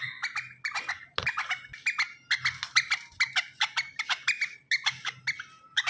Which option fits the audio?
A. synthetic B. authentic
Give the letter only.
B